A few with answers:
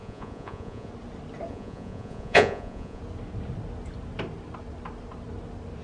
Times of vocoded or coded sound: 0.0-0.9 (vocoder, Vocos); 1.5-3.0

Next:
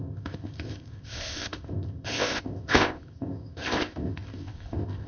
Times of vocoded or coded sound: 0.0-5.1 (codec, ZipCodec)

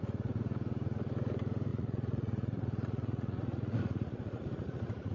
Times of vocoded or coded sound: 1.7-5.1 (vocoder, Vocos)

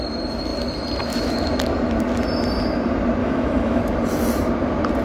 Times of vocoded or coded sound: 3.2-3.8 (autoencoder, DAC-VAE)

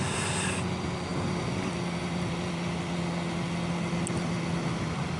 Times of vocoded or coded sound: none

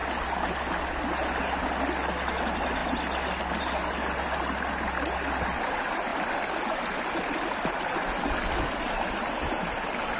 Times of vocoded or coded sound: none